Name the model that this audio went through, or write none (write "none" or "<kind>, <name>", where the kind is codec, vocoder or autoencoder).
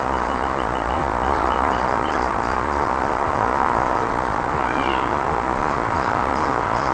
vocoder, Vocos